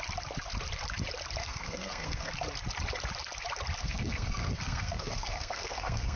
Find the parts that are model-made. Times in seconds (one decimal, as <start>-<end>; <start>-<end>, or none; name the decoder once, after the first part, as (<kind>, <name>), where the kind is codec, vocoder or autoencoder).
1.4-2.3 (codec, SNAC); 3.8-6.2